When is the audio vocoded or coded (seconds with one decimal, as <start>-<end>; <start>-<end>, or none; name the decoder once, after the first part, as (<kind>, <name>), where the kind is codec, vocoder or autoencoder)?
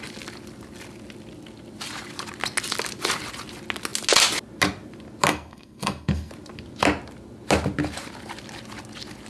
5.3-6.3 (codec, SNAC)